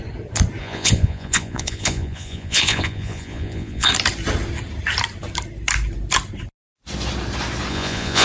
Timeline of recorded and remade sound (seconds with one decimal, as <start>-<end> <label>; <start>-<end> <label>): 0.0-0.6 recorded; 0.6-3.9 remade; 3.9-7.7 recorded; 7.7-8.2 remade